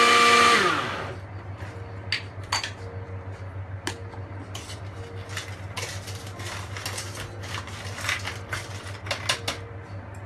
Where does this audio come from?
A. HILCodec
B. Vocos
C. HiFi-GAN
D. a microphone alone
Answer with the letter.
D